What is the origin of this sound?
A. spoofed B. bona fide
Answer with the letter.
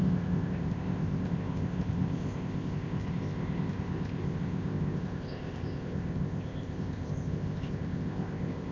A